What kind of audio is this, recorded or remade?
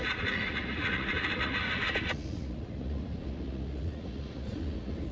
remade